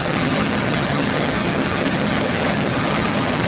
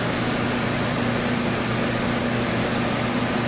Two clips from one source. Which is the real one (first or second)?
second